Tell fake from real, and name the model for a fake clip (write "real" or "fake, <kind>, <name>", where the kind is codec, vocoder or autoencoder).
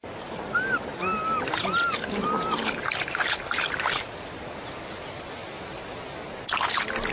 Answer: real